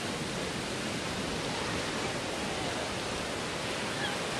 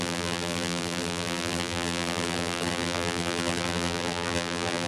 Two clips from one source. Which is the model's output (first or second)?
second